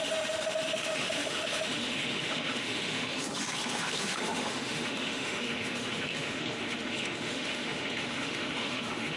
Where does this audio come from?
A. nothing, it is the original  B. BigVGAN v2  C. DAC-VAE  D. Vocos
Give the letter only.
C